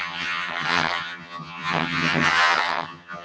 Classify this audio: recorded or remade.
remade